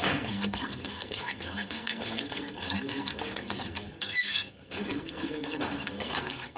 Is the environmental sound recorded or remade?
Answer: remade